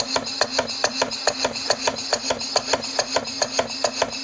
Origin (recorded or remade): recorded